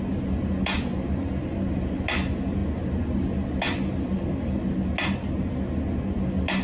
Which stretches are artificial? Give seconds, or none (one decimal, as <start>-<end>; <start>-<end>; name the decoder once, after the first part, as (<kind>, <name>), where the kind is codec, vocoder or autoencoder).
none

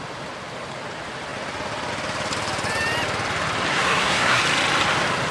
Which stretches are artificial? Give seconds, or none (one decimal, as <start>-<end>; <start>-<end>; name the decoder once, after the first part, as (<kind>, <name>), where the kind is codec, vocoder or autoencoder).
3.7-4.4 (codec, SNAC)

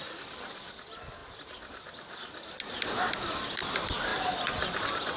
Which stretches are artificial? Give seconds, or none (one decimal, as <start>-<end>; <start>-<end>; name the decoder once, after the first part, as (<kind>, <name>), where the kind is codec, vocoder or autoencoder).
none

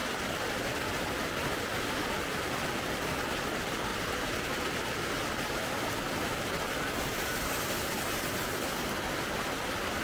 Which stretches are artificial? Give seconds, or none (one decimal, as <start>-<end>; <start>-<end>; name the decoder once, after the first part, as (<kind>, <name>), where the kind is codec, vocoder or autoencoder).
none

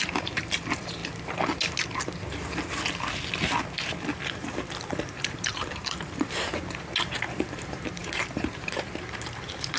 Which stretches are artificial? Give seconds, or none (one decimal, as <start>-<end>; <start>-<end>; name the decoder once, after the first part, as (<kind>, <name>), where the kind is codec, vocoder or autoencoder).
0.0-1.0 (vocoder, BigVGAN v2); 5.3-6.5; 7.0-9.8

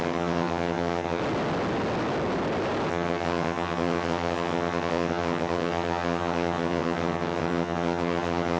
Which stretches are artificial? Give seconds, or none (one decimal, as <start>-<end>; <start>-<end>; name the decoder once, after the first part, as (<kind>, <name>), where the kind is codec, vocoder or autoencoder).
0.0-1.2 (vocoder, HiFi-GAN); 2.9-8.6